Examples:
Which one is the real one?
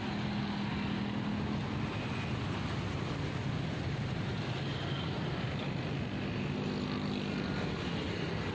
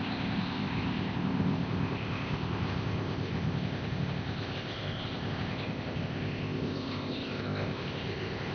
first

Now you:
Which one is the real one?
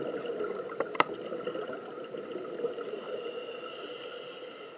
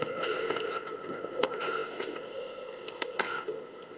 first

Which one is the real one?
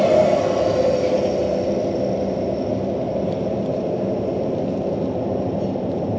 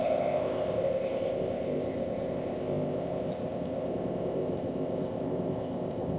first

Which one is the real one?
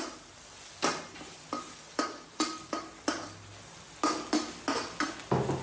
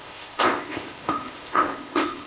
first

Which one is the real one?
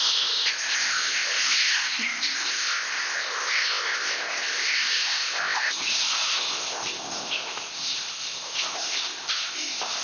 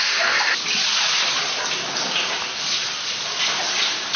second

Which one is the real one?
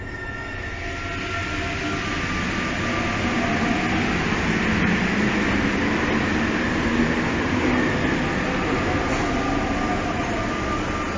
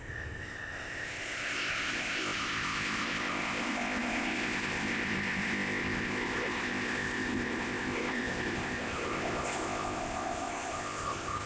first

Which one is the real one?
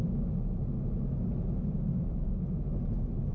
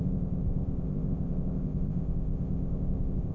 first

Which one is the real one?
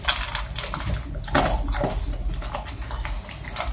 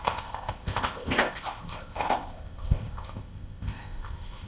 first